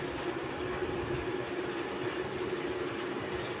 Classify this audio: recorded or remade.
recorded